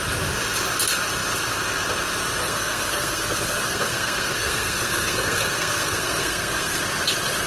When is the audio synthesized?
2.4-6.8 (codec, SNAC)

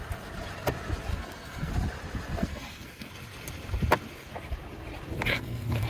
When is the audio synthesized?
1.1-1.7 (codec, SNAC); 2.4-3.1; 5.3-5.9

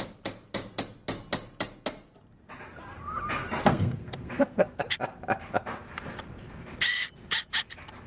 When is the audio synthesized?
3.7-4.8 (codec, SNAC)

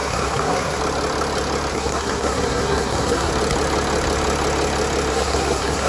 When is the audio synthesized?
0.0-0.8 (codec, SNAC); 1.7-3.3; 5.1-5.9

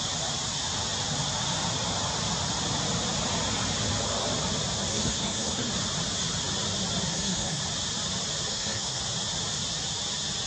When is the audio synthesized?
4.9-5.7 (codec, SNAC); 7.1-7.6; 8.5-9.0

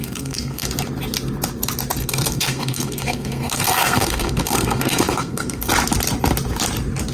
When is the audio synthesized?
0.0-0.7 (codec, SNAC); 2.0-5.7